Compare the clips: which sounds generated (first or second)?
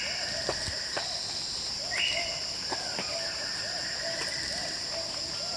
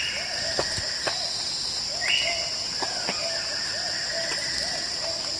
first